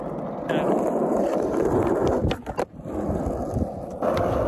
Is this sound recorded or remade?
recorded